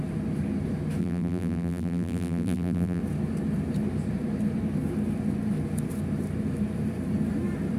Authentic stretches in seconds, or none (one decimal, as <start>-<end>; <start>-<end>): 0.0-1.0; 3.0-7.8

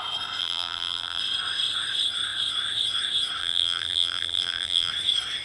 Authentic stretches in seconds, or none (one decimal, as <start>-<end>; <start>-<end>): 0.0-0.4; 1.2-3.4; 4.9-5.4

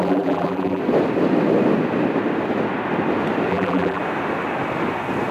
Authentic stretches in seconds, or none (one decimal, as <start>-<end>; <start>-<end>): 0.8-3.5; 4.0-5.3

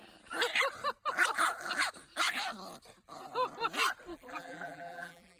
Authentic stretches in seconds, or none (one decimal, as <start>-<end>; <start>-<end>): 0.0-4.1

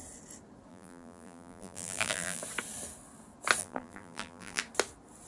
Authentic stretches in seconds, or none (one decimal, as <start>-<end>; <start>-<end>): 0.0-0.7; 2.4-3.6; 4.6-5.3

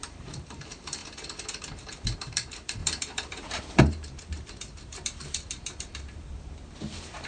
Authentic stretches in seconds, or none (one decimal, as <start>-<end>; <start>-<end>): 1.0-1.6